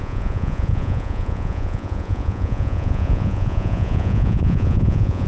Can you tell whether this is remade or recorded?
remade